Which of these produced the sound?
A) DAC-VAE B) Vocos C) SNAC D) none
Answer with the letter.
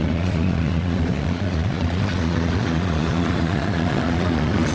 B